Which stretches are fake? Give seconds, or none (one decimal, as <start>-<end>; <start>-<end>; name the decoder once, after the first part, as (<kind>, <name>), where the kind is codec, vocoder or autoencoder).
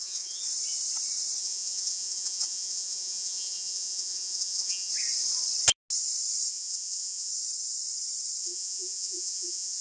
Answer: 0.0-0.4 (vocoder, Vocos); 1.4-4.9; 6.5-7.3; 8.4-9.8